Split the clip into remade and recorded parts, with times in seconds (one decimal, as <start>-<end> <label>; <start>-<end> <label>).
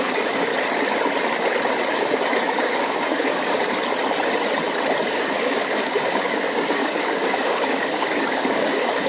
0.0-0.5 remade; 0.5-1.9 recorded; 1.9-3.6 remade; 3.6-5.0 recorded; 5.0-9.1 remade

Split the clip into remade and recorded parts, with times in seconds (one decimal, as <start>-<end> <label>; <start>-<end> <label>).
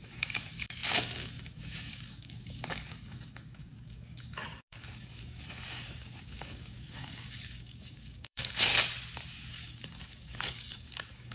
0.0-8.7 remade; 8.7-9.5 recorded; 9.5-11.3 remade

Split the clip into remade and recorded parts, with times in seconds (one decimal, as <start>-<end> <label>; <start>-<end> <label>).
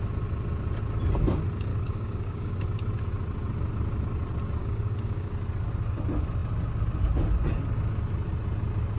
0.0-1.7 recorded; 1.7-2.6 remade; 2.6-4.6 recorded; 4.6-5.3 remade; 5.3-9.0 recorded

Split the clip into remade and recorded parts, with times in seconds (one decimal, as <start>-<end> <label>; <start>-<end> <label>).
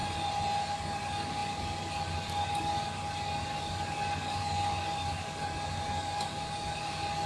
0.0-0.7 recorded; 0.7-7.3 remade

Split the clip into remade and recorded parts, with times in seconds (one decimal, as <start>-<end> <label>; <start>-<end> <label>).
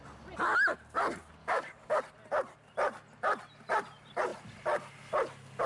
0.0-1.4 recorded; 1.4-2.0 remade; 2.0-5.7 recorded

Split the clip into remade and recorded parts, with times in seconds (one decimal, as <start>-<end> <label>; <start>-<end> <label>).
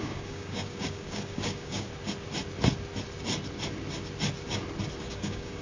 0.0-1.9 remade; 1.9-5.0 recorded; 5.0-5.6 remade